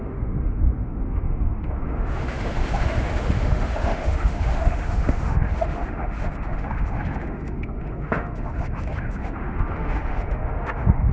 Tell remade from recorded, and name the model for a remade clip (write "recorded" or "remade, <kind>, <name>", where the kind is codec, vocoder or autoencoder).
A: remade, autoencoder, DAC-VAE